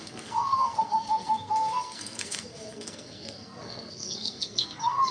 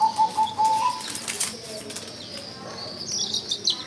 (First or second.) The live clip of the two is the second